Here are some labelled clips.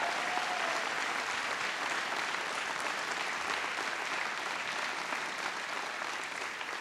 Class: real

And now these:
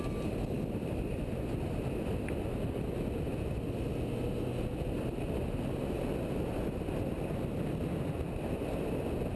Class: real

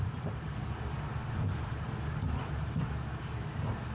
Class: fake